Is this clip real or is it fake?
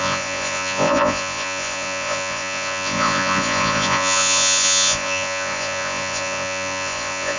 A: fake